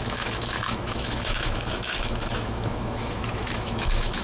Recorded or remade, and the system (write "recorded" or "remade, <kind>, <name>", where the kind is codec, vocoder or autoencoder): remade, autoencoder, DAC-VAE